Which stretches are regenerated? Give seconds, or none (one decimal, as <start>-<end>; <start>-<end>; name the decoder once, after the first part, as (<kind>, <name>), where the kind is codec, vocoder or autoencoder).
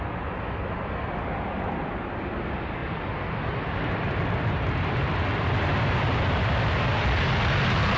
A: none